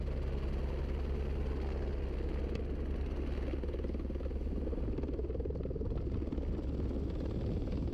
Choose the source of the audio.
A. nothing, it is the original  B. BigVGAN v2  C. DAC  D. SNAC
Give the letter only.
A